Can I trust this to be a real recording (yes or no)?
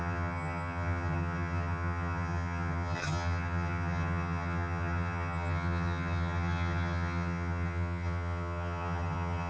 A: no